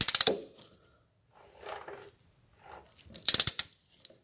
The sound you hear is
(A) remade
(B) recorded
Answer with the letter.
B